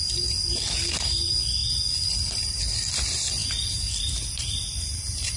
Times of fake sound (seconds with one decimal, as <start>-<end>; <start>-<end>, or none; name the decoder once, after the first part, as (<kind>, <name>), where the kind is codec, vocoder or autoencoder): 0.0-3.4 (vocoder, BigVGAN v2); 4.5-5.4